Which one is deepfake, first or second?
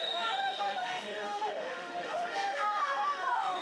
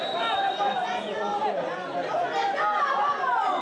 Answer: first